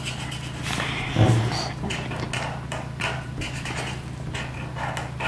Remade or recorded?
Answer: recorded